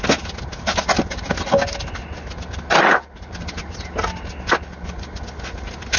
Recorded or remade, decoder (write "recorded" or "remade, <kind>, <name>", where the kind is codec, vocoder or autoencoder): recorded